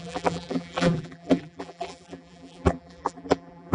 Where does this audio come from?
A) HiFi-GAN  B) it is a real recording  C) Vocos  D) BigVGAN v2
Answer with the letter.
D